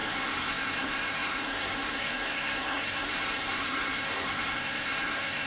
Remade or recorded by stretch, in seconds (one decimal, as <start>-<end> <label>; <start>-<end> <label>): 0.0-5.5 remade